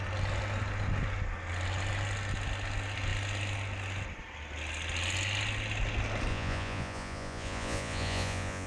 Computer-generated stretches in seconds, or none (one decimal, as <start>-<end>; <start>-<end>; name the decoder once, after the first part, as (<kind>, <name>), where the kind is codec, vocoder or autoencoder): 6.3-8.7 (vocoder, Vocos)